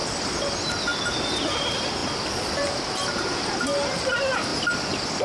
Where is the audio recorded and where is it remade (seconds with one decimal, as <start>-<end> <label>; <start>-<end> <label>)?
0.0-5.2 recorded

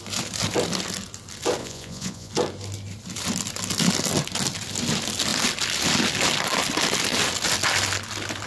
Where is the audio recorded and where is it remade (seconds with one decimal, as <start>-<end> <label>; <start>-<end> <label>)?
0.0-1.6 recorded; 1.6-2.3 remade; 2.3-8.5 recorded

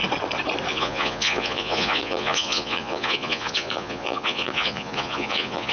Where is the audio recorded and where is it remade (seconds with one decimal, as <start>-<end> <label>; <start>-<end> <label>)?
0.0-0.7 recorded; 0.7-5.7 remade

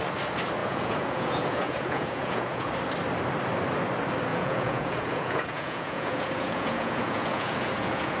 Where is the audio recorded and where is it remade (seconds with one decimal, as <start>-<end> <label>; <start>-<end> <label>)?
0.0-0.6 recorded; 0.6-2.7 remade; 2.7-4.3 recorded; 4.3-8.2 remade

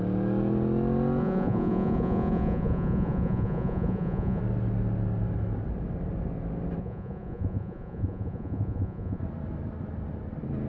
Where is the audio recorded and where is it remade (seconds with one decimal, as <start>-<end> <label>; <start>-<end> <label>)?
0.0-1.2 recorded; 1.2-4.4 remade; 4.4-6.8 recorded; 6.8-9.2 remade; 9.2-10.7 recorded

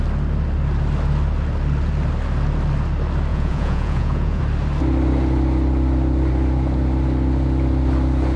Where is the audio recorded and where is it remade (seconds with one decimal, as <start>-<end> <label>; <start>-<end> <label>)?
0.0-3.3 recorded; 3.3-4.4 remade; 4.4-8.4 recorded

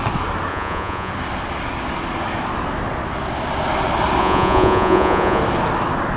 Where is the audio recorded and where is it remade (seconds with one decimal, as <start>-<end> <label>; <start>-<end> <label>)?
0.0-0.5 recorded; 0.5-1.1 remade; 1.1-4.2 recorded; 4.2-5.4 remade; 5.4-6.2 recorded

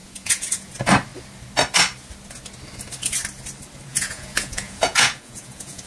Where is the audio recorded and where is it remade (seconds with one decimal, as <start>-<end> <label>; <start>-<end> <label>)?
0.0-0.7 remade; 0.7-3.9 recorded; 3.9-5.9 remade